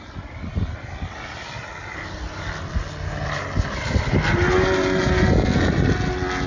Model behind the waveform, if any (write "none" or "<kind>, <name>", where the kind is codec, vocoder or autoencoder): none